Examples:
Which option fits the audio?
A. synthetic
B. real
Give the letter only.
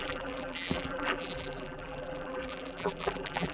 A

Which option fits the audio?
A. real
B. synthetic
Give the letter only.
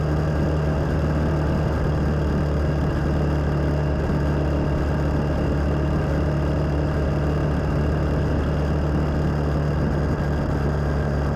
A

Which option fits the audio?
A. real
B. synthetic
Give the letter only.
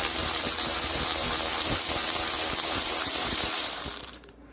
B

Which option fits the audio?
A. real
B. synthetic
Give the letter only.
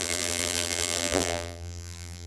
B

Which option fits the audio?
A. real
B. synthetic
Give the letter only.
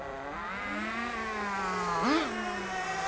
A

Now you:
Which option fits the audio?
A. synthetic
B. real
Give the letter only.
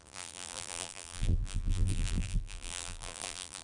A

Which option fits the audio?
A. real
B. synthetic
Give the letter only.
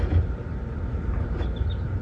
A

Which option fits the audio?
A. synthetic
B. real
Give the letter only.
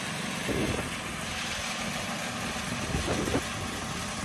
B